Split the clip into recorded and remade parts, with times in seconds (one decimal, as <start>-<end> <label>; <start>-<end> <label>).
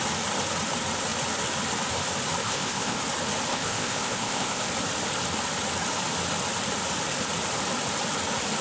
0.0-2.4 recorded; 2.4-3.0 remade; 3.0-3.5 recorded; 3.5-4.7 remade; 4.7-8.6 recorded